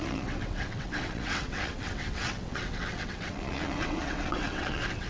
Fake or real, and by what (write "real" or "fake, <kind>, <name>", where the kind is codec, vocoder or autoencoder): fake, vocoder, WaveNeXt